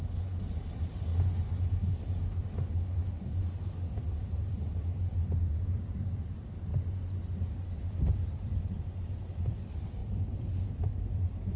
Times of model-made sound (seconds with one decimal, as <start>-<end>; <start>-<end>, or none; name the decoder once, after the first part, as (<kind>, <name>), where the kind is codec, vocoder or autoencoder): 0.0-1.1 (vocoder, BigVGAN v2); 4.0-6.7; 7.5-11.6